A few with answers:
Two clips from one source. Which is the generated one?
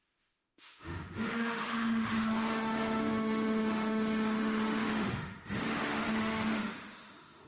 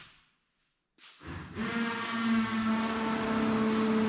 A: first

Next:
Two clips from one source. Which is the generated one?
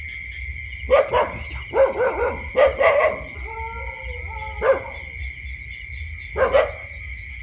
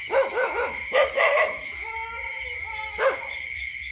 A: second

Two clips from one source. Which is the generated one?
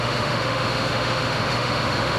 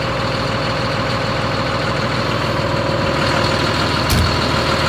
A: first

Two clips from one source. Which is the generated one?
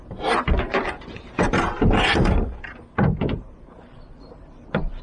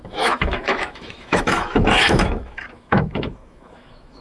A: second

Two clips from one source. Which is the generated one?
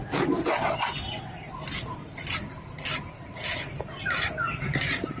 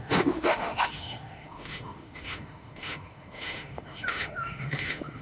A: second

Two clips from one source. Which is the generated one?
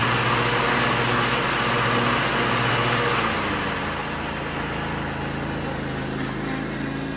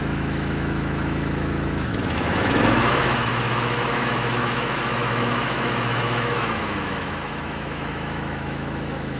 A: second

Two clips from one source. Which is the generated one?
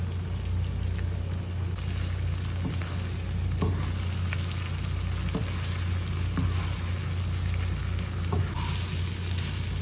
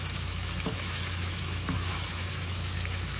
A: second